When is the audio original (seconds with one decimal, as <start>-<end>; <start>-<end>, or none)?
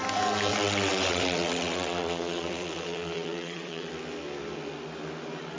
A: 0.0-0.5; 3.9-5.6